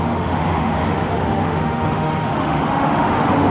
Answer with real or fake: fake